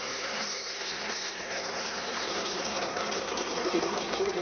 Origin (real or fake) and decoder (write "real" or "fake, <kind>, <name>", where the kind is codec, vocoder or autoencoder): fake, codec, SNAC